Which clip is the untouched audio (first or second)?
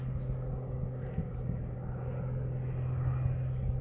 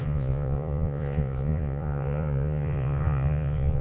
first